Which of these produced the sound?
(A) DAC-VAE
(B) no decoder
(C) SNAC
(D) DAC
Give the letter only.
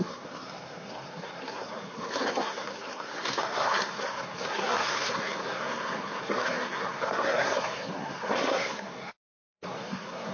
C